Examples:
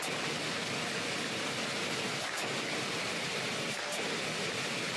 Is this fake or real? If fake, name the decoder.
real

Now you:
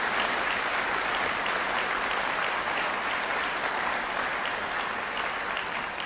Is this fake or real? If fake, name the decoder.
real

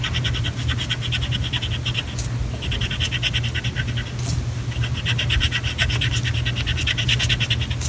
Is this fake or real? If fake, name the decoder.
real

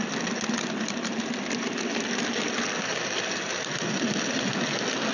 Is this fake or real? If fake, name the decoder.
real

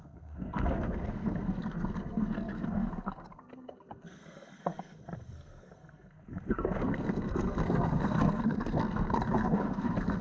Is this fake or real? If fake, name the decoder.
fake, codec, SNAC